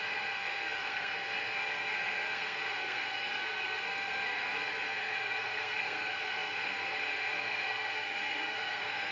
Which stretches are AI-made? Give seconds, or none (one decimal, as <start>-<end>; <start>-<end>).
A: 0.0-9.1